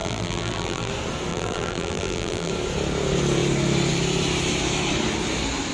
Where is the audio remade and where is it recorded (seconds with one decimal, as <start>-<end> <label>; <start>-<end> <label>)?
0.0-0.9 remade; 0.9-1.3 recorded; 1.3-2.5 remade; 2.5-5.7 recorded